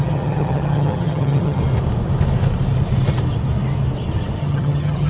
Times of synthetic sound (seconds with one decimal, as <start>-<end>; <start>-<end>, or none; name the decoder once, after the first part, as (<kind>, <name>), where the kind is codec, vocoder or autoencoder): 0.0-1.6 (vocoder, HiFi-GAN); 4.4-5.1